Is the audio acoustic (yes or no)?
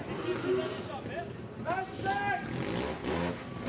yes